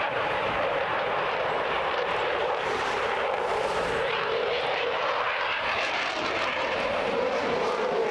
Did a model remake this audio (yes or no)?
yes